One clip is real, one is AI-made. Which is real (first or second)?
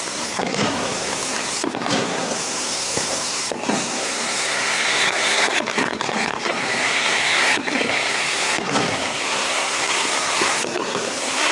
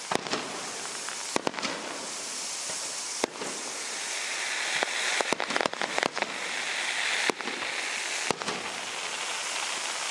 second